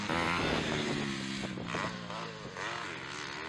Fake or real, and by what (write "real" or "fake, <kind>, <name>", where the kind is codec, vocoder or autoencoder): real